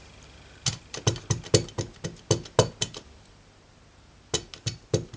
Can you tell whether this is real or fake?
real